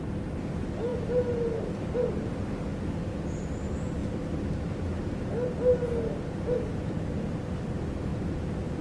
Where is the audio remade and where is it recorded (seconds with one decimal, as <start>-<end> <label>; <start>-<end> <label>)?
0.0-8.8 recorded